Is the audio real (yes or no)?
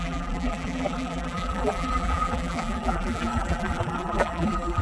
no